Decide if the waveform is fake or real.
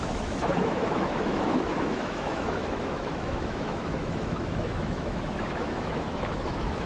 fake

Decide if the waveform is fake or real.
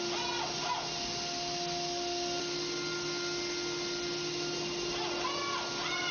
real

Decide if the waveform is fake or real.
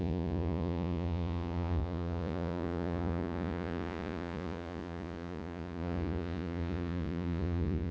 fake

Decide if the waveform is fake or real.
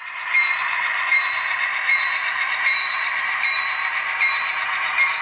fake